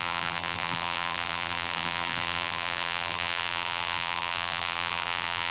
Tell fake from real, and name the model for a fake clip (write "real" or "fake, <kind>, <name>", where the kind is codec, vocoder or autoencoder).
fake, vocoder, BigVGAN v2